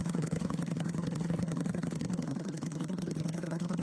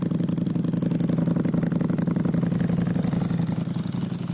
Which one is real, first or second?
second